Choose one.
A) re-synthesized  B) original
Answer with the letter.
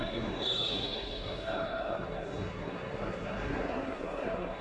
A